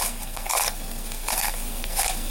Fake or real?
fake